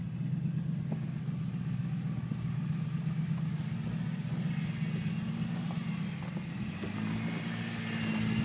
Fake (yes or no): no